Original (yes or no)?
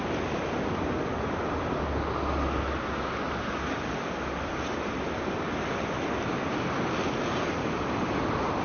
yes